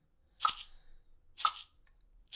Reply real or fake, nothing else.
real